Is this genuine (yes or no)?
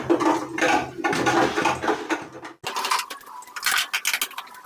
yes